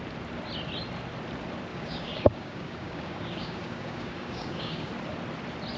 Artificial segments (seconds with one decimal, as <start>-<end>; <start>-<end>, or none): 1.7-4.9